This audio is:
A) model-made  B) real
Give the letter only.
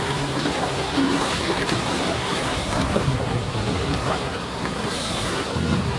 A